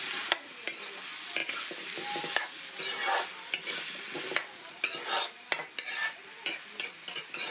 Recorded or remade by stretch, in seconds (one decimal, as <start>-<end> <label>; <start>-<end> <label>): 0.0-7.5 recorded